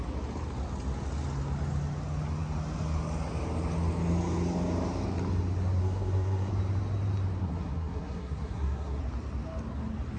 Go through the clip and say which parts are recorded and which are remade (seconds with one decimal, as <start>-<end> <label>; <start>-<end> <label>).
0.0-5.8 recorded; 5.8-6.5 remade; 6.5-7.4 recorded; 7.4-9.0 remade; 9.0-10.2 recorded